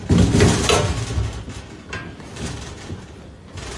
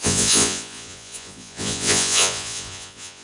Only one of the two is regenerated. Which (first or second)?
second